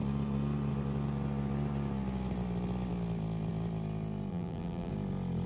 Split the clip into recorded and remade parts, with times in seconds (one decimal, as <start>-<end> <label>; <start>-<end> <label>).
0.0-4.3 recorded; 4.3-4.9 remade; 4.9-5.5 recorded